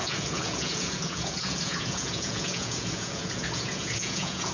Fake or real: fake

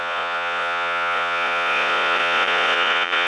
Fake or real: fake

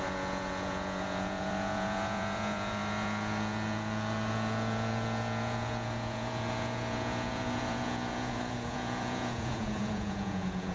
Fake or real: fake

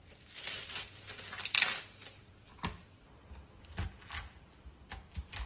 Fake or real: real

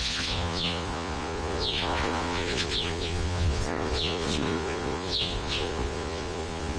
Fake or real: fake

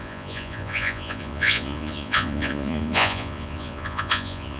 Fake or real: fake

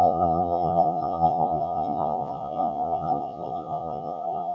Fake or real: fake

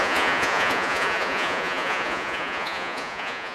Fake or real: fake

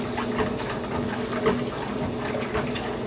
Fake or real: real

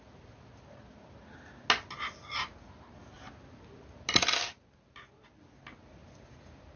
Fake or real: real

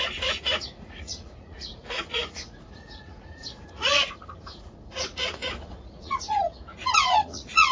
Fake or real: fake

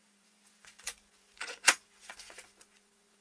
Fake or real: fake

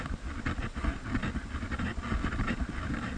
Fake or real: real